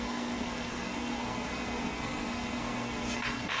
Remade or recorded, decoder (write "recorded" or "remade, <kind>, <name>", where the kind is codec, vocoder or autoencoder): remade, codec, SNAC